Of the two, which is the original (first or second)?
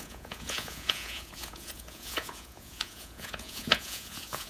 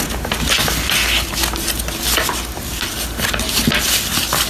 second